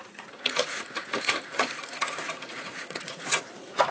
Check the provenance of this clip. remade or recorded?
remade